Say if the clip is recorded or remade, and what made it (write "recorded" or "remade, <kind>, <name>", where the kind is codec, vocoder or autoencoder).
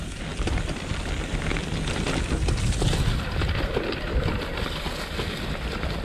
recorded